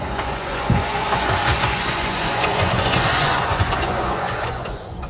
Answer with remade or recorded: remade